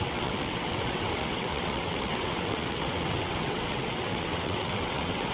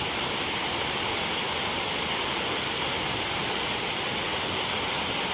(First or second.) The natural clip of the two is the second